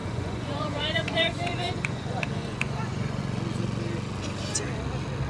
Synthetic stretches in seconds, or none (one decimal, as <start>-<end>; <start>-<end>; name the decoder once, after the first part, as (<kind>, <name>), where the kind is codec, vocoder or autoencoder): 0.0-3.2 (vocoder, Vocos)